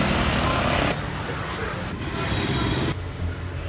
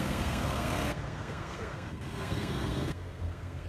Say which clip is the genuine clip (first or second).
first